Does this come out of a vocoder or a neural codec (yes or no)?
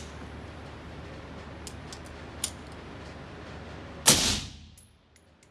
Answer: no